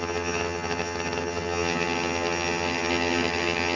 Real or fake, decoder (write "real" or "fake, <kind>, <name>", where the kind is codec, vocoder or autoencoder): fake, vocoder, HiFi-GAN